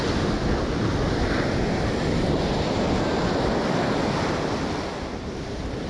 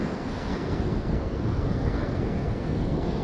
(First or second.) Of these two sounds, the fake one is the second